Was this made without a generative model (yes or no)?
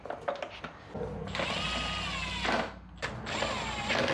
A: yes